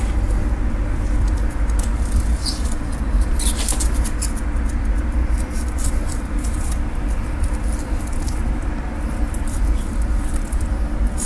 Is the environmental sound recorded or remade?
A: remade